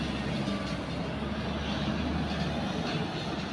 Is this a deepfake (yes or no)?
no